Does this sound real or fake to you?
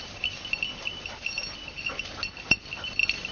real